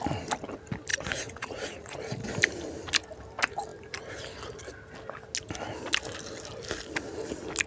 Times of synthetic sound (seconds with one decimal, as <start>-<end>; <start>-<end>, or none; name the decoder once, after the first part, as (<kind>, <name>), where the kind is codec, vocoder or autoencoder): 0.9-2.0 (vocoder, Vocos)